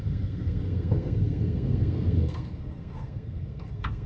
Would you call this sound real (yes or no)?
no